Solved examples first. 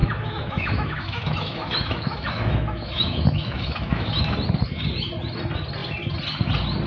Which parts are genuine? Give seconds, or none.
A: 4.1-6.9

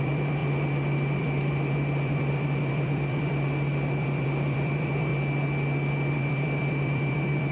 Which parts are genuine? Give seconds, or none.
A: 5.1-6.1

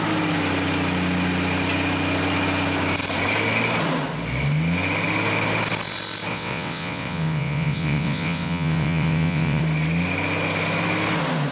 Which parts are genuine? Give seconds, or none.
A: 0.0-6.3; 9.6-11.5

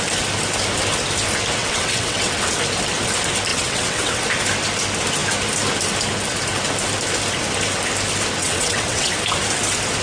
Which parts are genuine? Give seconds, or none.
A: 0.0-1.6; 2.4-3.5; 4.2-8.4; 9.1-10.0

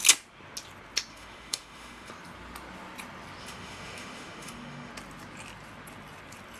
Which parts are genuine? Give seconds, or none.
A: 0.0-1.1; 2.1-3.4; 4.9-6.6

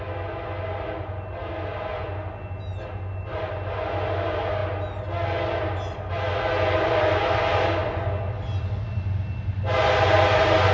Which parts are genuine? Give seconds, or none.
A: 0.0-10.7